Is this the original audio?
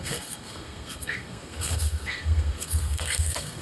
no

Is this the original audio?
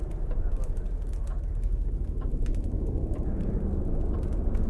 yes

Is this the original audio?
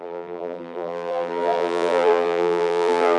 no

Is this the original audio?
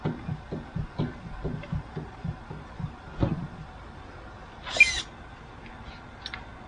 yes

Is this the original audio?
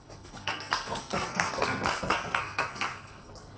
no